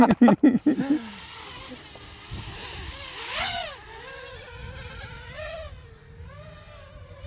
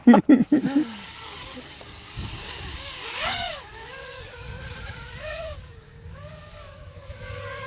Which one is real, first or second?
first